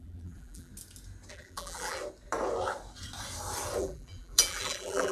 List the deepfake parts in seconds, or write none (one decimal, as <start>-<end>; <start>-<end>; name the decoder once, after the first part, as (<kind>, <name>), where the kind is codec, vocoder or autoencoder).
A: 0.0-0.7 (vocoder, BigVGAN v2); 1.3-2.0; 3.8-5.1